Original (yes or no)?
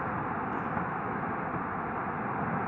yes